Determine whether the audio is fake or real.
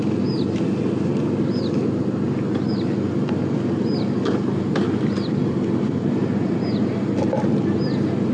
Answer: real